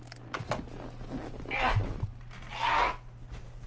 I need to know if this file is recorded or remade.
recorded